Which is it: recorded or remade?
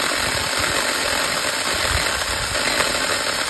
recorded